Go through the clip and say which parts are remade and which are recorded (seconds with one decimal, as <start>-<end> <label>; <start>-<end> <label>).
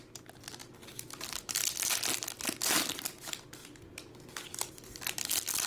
0.0-5.7 recorded